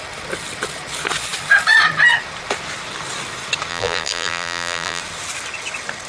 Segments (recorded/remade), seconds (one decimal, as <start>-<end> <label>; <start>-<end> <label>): 0.0-3.7 recorded; 3.7-5.0 remade; 5.0-6.1 recorded